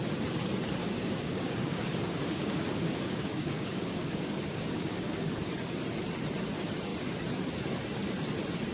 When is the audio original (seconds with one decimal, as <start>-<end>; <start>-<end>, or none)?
0.0-0.8; 5.5-8.7